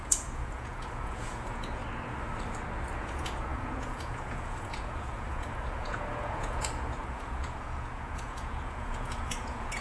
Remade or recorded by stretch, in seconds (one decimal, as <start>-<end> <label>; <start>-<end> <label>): 0.0-1.8 remade; 1.8-3.0 recorded; 3.0-9.8 remade